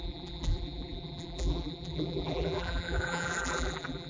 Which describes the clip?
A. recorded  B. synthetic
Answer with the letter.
B